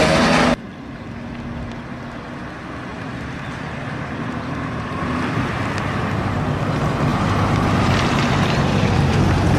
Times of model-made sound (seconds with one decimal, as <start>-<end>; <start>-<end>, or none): 2.9-5.1; 7.1-9.2